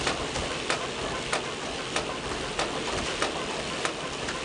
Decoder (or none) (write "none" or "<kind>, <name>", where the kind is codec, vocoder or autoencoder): none